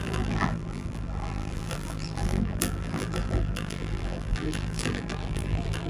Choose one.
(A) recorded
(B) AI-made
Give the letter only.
B